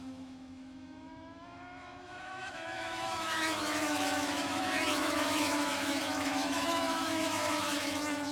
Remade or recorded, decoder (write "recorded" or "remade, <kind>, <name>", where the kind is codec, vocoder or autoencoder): remade, autoencoder, DAC-VAE